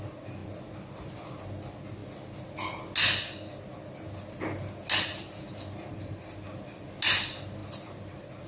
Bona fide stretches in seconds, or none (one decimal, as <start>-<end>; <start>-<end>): 0.0-8.5